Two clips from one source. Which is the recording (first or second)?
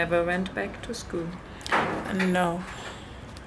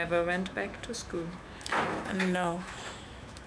first